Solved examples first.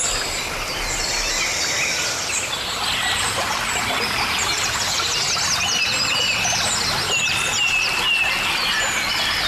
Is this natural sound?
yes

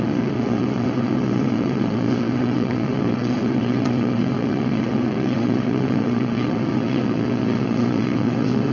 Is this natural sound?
no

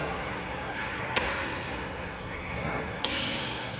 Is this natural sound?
no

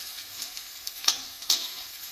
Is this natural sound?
no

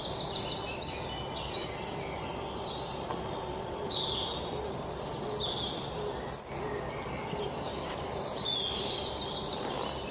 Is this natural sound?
yes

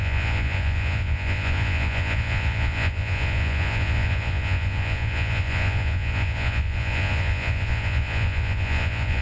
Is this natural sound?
no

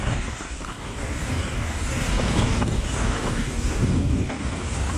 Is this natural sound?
no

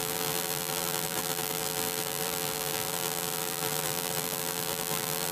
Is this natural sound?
no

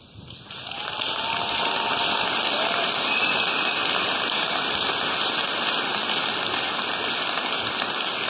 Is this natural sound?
yes